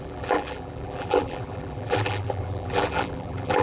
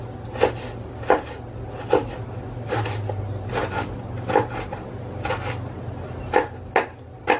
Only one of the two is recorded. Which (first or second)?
second